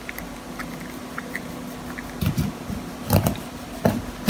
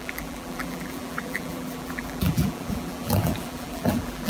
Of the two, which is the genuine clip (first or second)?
first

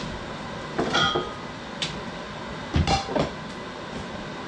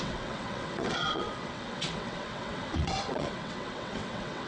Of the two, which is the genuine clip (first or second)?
first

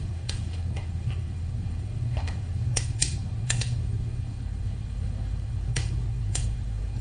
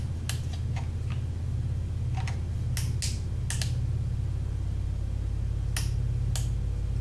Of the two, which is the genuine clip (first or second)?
second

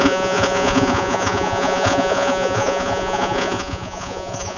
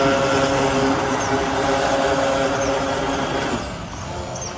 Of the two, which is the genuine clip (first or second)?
second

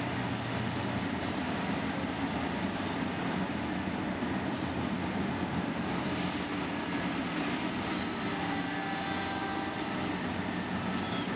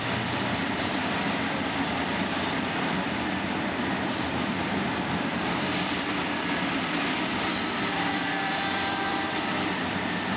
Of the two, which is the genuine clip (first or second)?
first